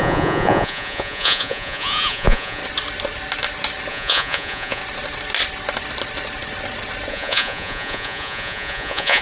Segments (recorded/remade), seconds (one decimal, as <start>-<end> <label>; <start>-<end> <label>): 0.0-2.6 remade; 2.6-3.9 recorded; 3.9-4.8 remade; 4.8-7.1 recorded; 7.1-9.2 remade